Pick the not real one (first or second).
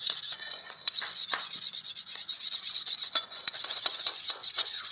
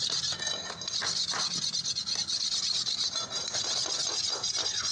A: first